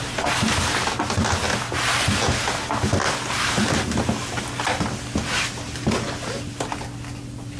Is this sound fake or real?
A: real